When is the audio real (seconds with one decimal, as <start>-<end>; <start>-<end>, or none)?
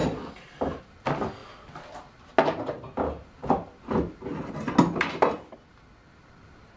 0.0-6.8